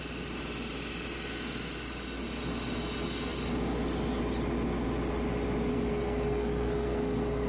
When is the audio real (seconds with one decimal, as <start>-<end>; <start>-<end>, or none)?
0.0-5.7